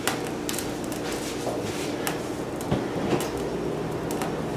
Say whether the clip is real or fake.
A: real